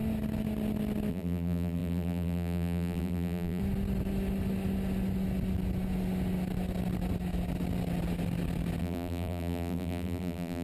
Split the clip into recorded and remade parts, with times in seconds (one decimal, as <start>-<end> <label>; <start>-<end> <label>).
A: 0.0-1.1 recorded; 1.1-3.6 remade; 3.6-8.8 recorded; 8.8-10.6 remade